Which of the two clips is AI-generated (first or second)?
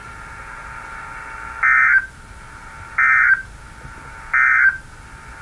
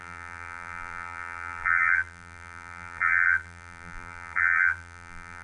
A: second